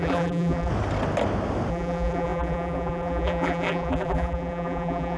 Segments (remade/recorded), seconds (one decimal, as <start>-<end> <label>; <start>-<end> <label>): 0.0-0.7 remade; 0.7-1.7 recorded; 1.7-5.2 remade